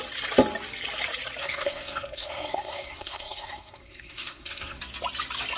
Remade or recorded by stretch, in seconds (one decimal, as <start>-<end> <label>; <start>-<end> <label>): 0.0-1.4 recorded; 1.4-4.8 remade; 4.8-5.6 recorded